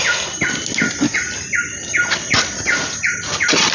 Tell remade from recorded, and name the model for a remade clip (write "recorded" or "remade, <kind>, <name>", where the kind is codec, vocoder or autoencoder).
recorded